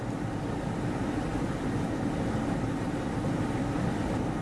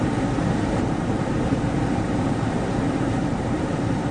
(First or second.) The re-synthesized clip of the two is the second